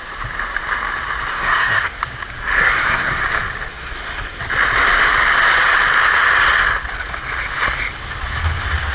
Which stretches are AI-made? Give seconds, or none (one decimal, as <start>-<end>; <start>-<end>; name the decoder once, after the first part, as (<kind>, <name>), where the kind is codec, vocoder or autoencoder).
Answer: 1.3-2.0 (codec, SNAC); 2.6-3.2; 3.7-4.4